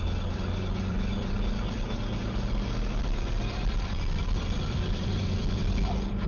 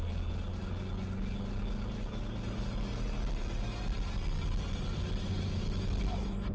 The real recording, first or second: second